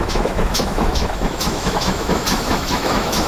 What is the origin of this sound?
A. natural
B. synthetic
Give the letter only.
B